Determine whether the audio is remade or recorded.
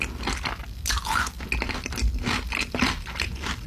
recorded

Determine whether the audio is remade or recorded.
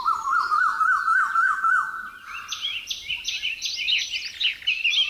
recorded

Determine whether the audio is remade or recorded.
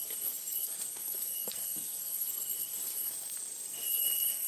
remade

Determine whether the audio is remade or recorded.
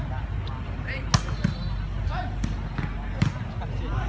recorded